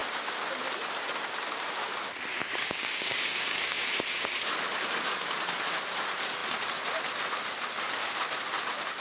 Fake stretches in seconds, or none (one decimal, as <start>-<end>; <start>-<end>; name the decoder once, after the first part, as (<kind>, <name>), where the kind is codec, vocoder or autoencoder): 2.4-4.0 (codec, DAC)